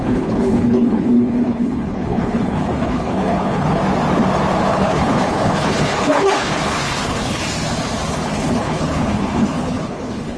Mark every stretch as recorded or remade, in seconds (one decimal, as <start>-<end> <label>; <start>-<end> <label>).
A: 0.0-3.8 remade; 3.8-4.7 recorded; 4.7-7.4 remade; 7.4-8.1 recorded; 8.1-10.4 remade